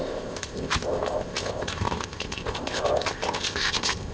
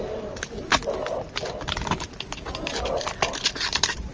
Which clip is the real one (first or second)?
second